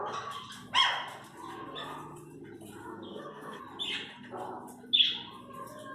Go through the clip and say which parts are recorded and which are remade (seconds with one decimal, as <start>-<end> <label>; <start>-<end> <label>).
0.0-2.8 recorded; 2.8-3.6 remade; 3.6-5.9 recorded